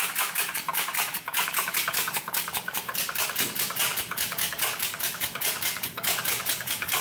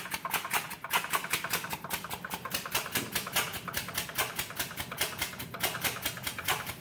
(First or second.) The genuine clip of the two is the second